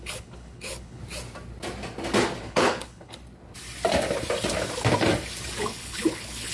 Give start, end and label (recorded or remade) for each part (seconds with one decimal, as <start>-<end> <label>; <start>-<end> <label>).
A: 0.0-1.0 remade; 1.0-2.4 recorded; 2.4-3.2 remade; 3.2-5.6 recorded; 5.6-6.5 remade